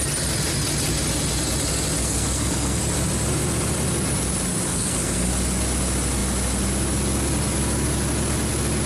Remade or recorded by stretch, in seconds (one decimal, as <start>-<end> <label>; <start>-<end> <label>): 0.0-2.0 recorded; 2.0-2.8 remade; 2.8-4.7 recorded; 4.7-5.3 remade; 5.3-8.9 recorded